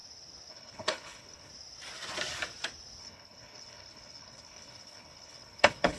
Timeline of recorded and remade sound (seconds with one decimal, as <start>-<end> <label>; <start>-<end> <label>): 0.0-0.5 recorded; 0.5-1.5 remade; 1.5-3.0 recorded; 3.0-6.0 remade